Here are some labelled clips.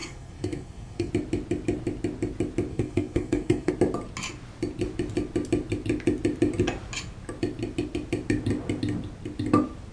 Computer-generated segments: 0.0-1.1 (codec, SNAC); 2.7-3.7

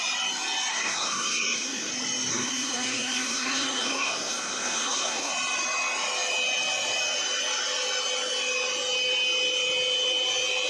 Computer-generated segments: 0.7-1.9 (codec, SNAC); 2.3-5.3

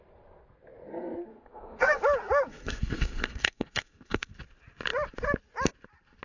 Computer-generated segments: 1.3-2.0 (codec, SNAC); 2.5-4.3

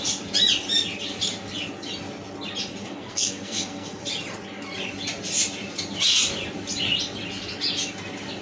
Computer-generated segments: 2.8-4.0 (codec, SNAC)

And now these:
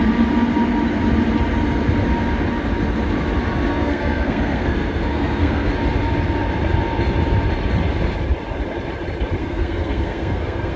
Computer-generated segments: 3.7-5.7 (codec, SNAC); 9.4-10.8